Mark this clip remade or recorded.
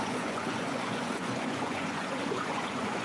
remade